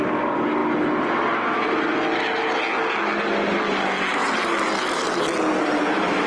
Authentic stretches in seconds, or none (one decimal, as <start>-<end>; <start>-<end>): 0.0-6.3